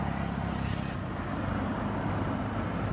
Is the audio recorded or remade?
recorded